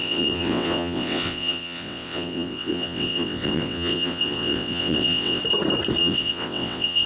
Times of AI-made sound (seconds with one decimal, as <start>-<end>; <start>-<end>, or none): 0.0-5.4; 6.0-7.1